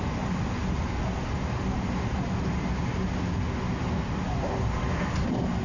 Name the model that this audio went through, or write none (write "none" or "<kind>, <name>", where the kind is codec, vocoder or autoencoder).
none